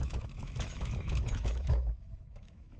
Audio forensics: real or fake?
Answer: fake